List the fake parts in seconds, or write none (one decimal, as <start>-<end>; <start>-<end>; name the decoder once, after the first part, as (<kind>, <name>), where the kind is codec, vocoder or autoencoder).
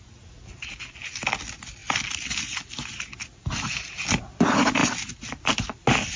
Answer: none